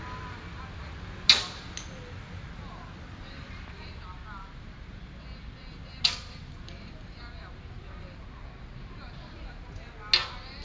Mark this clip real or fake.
real